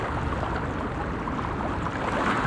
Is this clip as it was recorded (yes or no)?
yes